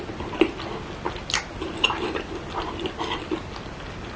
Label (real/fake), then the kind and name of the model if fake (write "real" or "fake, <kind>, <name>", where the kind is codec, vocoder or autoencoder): real